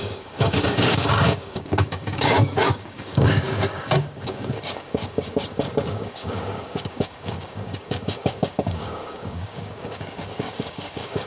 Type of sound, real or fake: fake